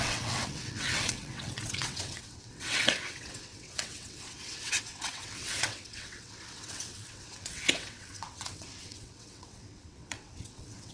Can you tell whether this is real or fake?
fake